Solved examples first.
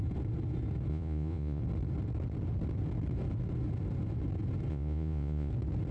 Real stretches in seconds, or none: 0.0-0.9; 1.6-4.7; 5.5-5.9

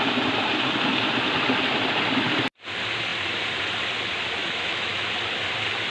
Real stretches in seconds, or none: 0.0-4.4; 5.1-5.9

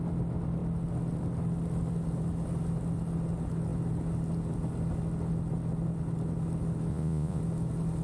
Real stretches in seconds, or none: 0.0-6.9; 7.4-8.0

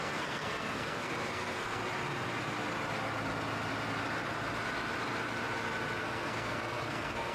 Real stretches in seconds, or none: 1.8-6.0

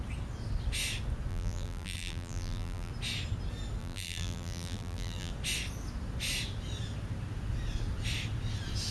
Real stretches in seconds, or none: 0.0-1.3; 2.9-3.8; 5.3-8.9

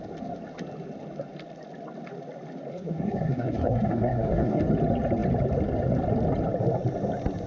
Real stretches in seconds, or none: 0.0-2.7; 4.6-7.5